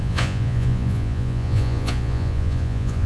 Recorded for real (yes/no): no